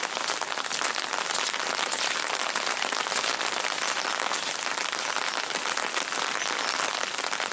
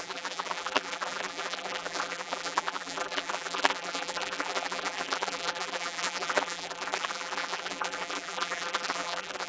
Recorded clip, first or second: first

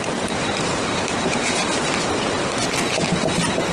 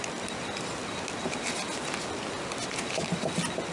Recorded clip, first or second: second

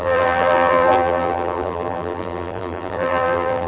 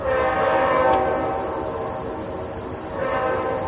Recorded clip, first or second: second